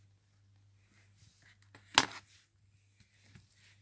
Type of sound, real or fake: real